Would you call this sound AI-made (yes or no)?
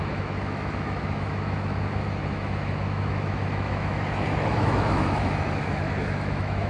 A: yes